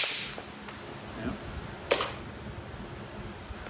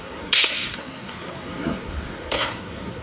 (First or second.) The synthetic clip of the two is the second